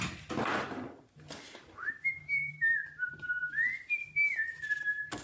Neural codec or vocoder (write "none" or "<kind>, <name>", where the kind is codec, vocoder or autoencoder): none